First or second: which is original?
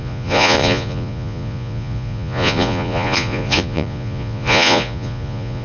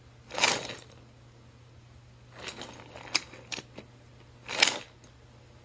second